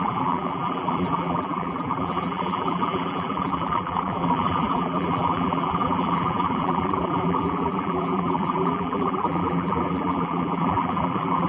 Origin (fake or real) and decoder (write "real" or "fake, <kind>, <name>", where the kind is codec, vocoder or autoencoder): fake, vocoder, BigVGAN v2